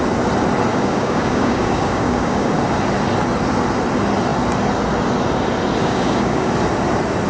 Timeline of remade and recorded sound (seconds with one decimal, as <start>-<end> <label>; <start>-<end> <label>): 0.0-0.7 recorded; 0.7-2.5 remade; 2.5-5.8 recorded; 5.8-6.5 remade; 6.5-7.3 recorded